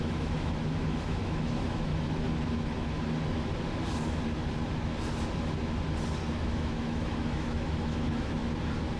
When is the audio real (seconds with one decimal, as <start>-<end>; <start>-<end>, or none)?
1.9-6.3; 8.4-9.0